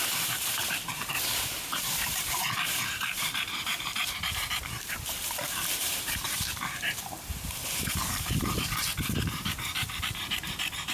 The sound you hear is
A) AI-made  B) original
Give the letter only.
A